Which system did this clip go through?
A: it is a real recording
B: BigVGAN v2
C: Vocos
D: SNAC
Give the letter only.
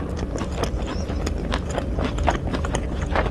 A